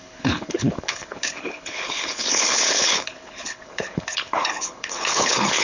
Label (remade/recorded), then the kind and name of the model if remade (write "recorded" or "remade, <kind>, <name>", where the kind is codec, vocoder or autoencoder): remade, codec, HILCodec